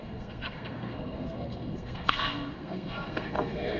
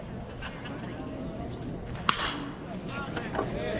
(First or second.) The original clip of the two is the second